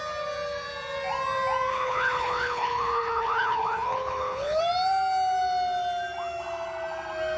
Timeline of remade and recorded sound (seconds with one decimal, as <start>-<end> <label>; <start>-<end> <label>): 0.0-1.7 recorded; 1.7-4.6 remade; 4.6-7.4 recorded